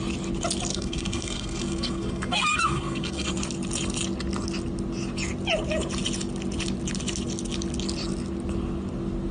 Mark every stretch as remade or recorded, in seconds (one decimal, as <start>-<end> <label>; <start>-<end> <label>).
0.0-0.7 recorded; 0.7-3.3 remade; 3.3-9.3 recorded